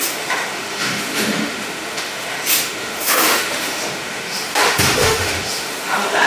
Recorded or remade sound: remade